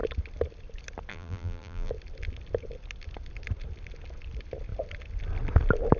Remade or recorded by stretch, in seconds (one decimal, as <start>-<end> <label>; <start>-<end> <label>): 0.0-1.1 recorded; 1.1-1.9 remade; 1.9-6.0 recorded